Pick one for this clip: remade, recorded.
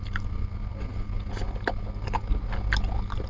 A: recorded